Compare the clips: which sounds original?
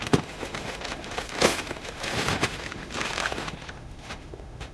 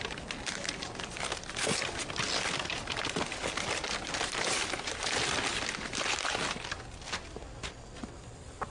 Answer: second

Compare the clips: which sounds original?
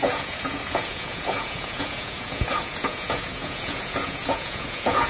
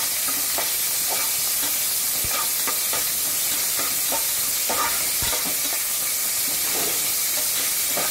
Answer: second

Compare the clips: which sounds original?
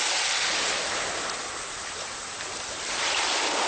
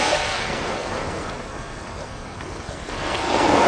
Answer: first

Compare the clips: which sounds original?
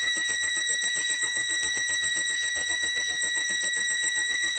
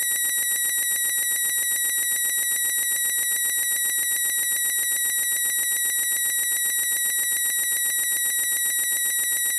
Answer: second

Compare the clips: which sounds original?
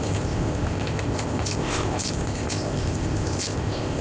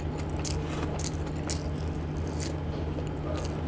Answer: second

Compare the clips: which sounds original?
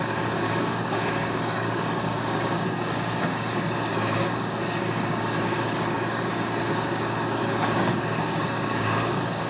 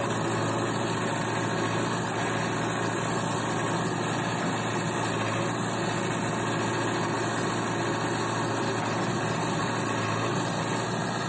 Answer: second